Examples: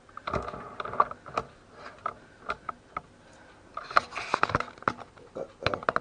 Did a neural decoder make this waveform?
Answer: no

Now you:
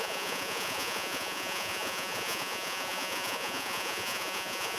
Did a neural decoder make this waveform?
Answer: yes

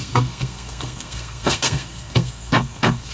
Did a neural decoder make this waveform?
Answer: yes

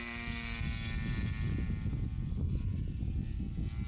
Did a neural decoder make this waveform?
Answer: no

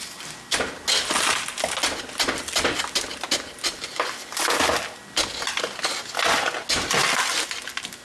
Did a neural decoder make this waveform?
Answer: no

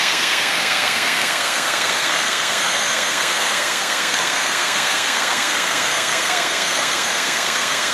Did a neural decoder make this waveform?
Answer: yes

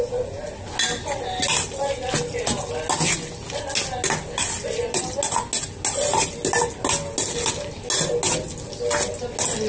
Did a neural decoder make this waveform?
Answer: no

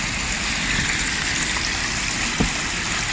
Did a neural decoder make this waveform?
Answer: no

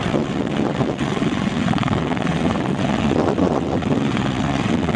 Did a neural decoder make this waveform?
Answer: yes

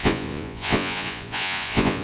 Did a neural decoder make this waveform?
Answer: yes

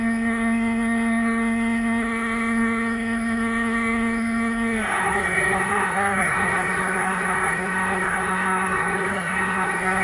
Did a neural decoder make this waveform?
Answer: yes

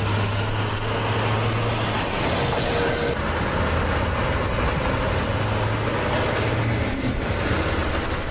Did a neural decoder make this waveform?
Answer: no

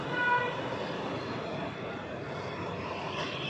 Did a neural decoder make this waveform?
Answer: no